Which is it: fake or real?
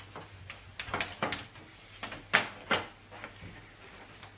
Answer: real